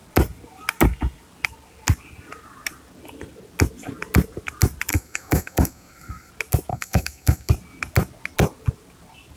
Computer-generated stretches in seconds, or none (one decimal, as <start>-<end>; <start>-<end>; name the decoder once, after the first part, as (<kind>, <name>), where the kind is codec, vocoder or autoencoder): 4.9-6.3 (codec, SNAC); 6.7-7.5